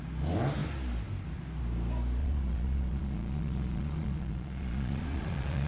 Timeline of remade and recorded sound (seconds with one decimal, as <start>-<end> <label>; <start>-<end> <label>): 0.0-2.2 recorded; 2.2-5.7 remade